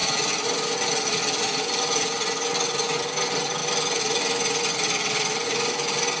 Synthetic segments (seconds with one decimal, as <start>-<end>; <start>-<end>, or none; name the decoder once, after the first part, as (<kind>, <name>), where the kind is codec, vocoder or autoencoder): none